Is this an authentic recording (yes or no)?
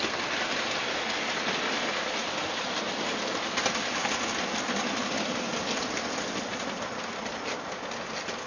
yes